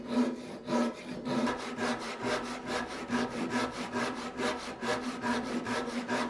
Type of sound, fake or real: real